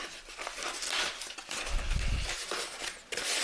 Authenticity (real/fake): real